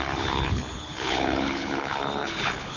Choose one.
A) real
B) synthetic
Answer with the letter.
B